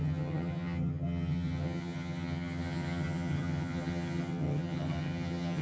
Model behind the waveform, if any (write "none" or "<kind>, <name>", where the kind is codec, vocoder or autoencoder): vocoder, HiFi-GAN